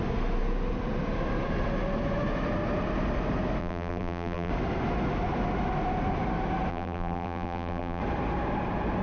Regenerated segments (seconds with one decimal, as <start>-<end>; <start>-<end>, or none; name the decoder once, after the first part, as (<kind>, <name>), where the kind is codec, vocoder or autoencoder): 3.6-4.5 (vocoder, BigVGAN v2); 6.7-8.0